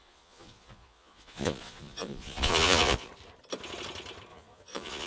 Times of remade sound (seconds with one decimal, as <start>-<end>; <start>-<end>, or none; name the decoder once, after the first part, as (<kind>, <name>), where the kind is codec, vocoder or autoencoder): 0.0-3.1 (vocoder, Vocos); 4.3-5.1